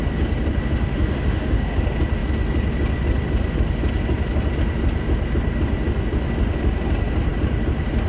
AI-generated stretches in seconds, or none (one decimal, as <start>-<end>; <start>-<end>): 0.9-1.8